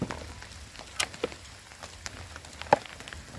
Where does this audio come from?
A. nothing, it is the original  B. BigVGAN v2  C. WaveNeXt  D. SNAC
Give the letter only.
A